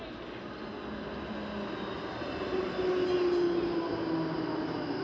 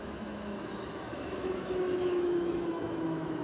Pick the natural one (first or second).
first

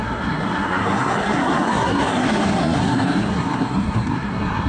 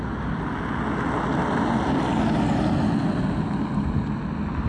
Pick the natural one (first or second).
second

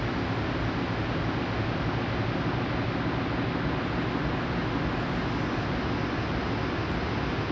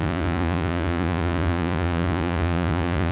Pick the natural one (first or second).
first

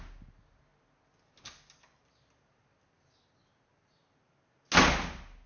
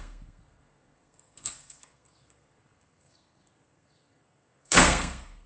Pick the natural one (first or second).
first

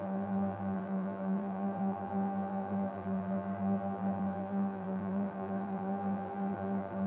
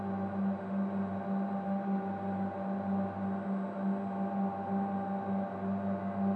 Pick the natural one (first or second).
second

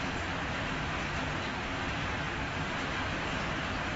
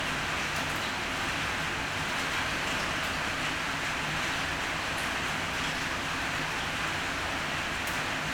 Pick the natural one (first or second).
second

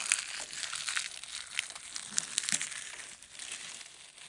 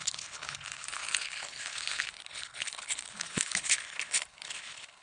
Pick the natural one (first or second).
first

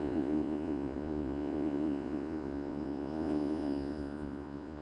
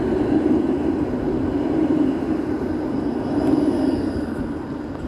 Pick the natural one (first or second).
second